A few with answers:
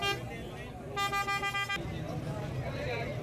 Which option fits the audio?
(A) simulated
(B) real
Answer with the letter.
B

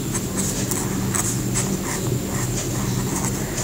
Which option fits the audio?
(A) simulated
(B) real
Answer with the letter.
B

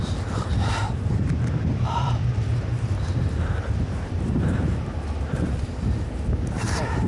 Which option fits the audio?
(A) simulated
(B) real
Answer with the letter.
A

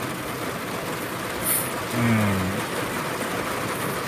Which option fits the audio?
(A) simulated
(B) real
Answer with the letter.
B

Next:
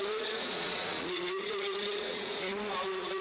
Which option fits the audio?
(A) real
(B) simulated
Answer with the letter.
B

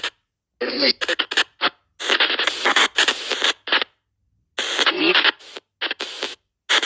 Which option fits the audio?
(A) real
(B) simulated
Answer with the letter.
A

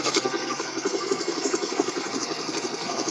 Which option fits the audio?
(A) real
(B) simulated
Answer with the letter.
B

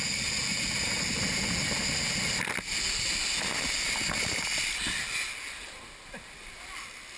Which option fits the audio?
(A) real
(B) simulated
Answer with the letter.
A